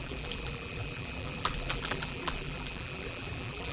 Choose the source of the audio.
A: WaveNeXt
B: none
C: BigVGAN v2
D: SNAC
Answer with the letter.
C